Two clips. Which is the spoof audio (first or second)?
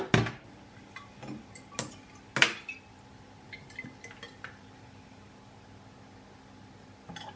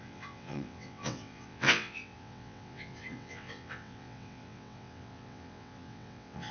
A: second